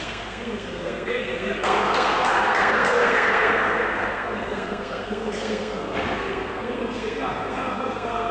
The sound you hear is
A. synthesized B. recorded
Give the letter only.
A